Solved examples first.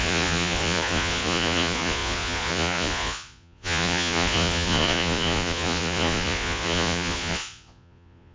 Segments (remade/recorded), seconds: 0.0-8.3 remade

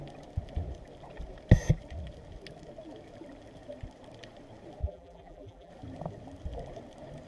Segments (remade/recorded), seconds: 0.0-4.8 recorded; 4.8-5.7 remade; 5.7-7.3 recorded

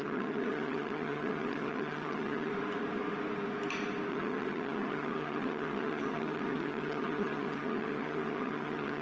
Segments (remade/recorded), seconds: 0.0-2.5 remade; 2.5-4.1 recorded; 4.1-9.0 remade